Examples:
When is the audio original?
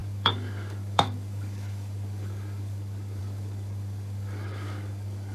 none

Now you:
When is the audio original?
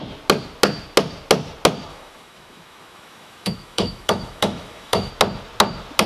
0.0-1.9; 5.1-6.1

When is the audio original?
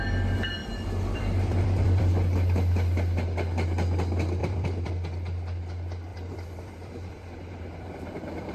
0.0-0.6; 2.1-4.4; 4.9-6.1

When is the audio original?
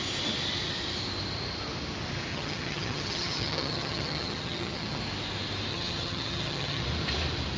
0.0-2.3; 5.0-5.7; 6.8-7.6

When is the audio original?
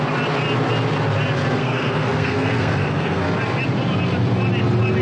0.0-1.6; 3.2-5.0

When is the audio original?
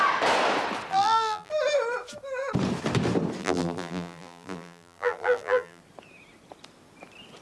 0.0-0.9; 1.5-3.4; 5.8-7.4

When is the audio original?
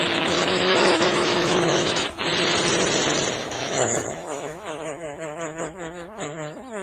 2.3-3.4